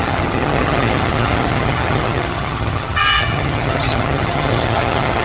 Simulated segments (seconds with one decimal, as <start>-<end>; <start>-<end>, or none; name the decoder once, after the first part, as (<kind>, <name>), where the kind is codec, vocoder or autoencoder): 0.0-5.2 (vocoder, HiFi-GAN)